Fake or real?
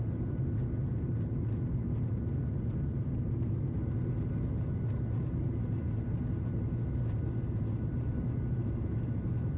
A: real